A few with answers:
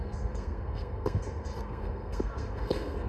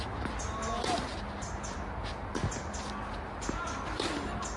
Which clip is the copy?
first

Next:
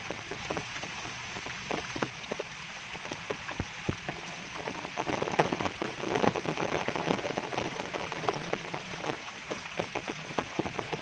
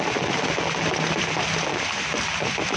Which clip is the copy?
first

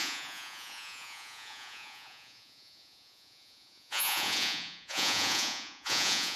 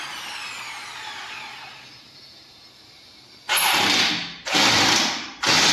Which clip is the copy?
first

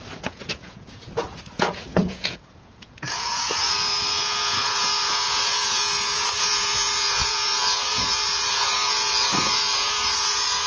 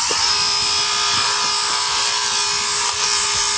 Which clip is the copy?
first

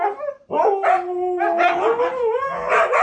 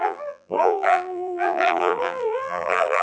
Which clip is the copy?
second